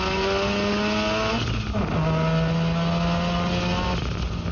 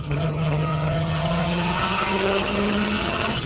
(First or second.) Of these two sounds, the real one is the first